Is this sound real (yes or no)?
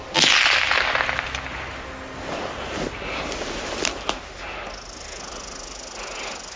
yes